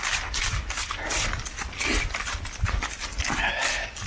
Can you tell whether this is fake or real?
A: real